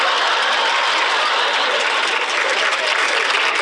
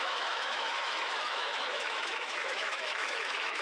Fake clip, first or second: second